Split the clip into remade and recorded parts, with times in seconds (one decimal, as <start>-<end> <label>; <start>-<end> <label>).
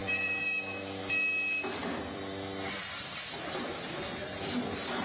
0.0-1.0 remade; 1.0-1.8 recorded; 1.8-5.0 remade